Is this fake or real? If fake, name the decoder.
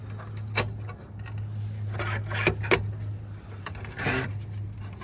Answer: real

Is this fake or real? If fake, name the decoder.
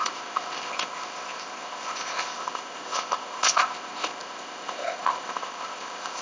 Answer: fake, codec, ZipCodec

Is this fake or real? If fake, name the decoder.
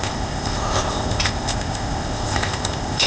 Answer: fake, codec, ZipCodec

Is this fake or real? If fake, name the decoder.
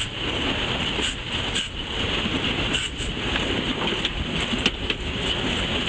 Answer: real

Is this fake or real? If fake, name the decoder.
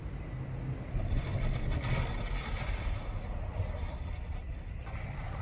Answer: real